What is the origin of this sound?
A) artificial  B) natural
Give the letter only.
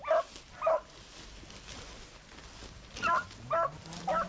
B